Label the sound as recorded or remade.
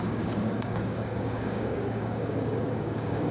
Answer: remade